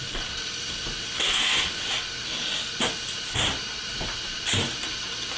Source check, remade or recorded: recorded